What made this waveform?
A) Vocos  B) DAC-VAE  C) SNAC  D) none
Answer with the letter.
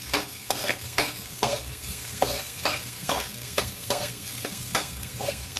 C